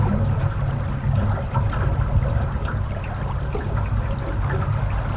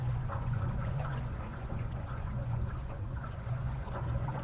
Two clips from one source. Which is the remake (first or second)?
second